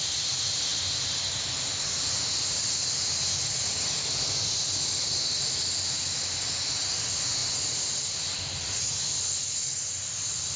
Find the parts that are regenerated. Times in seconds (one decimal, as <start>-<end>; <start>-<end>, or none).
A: none